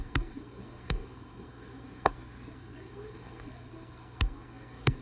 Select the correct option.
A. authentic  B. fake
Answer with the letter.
B